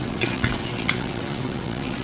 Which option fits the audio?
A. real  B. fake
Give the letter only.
B